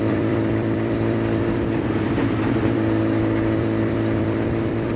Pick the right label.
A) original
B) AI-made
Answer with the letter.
B